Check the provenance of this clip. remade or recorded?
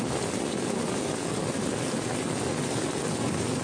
recorded